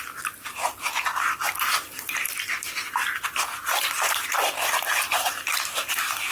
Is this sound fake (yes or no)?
no